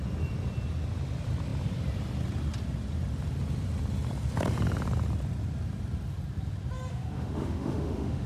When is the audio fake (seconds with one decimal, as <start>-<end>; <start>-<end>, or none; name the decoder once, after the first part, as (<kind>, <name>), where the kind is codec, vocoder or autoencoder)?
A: 6.9-8.3 (autoencoder, DAC-VAE)